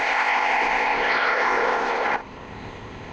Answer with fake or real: fake